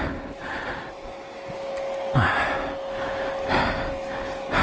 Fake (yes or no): no